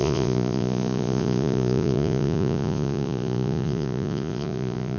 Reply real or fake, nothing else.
fake